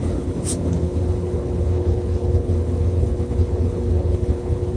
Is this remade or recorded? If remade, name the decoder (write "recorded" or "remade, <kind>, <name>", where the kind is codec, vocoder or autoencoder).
remade, codec, HILCodec